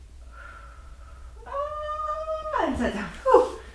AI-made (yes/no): yes